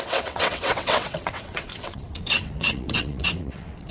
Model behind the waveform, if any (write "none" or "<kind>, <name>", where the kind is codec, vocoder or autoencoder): vocoder, WaveNeXt